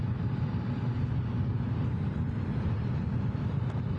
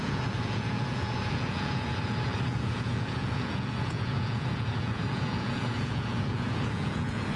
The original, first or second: first